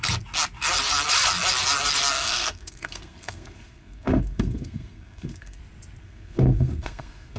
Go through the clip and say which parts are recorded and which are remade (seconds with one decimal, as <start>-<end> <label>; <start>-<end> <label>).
0.0-2.1 recorded; 2.1-5.6 remade; 5.6-6.0 recorded; 6.0-7.4 remade